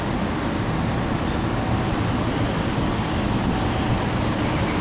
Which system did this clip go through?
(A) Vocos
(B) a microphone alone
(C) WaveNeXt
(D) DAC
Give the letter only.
B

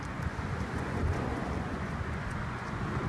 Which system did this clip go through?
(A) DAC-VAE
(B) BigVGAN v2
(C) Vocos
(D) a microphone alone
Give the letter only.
C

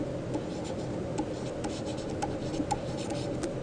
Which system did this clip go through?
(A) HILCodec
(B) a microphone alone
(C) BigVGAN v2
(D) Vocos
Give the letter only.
B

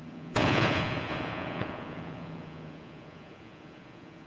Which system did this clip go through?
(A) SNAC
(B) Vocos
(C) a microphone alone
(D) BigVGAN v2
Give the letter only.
B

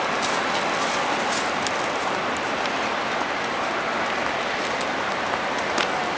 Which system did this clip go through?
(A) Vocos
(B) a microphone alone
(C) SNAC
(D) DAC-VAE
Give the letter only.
B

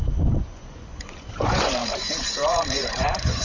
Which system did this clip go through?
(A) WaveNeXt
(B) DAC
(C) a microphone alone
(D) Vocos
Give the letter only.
D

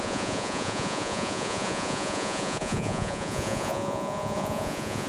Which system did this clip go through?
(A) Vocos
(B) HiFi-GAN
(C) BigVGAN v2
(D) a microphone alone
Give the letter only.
A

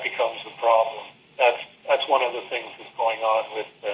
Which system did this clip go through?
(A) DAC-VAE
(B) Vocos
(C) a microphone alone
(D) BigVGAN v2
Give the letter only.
C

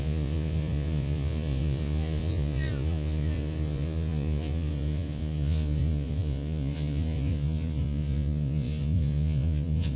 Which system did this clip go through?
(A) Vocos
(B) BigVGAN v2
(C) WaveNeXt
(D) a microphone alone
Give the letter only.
A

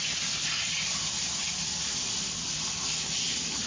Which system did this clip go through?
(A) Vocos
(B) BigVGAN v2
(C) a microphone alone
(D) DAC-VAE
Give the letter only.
C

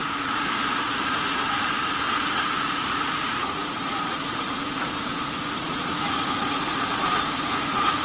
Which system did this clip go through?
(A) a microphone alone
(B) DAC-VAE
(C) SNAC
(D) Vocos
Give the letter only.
D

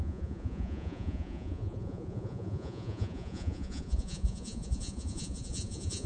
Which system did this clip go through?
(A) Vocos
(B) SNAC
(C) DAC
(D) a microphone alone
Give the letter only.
A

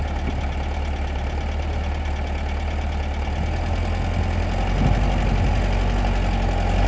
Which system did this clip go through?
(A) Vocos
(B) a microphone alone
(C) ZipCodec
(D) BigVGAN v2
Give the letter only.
B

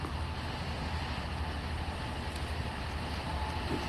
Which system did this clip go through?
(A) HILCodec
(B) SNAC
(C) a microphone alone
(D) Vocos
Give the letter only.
C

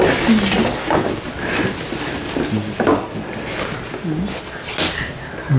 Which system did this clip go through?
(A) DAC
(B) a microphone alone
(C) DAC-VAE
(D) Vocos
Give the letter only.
B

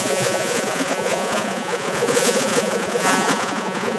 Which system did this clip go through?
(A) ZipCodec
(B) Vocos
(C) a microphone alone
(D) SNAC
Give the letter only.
B